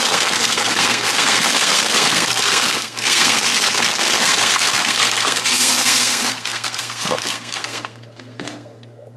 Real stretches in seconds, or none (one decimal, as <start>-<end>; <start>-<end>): none